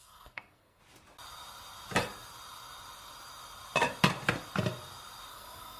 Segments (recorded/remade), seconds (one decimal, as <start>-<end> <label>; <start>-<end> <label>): 0.0-0.8 remade; 0.8-5.3 recorded; 5.3-5.8 remade